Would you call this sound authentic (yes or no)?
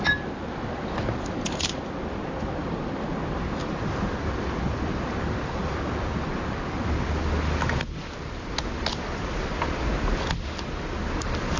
yes